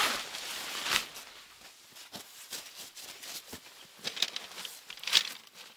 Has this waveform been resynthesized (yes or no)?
no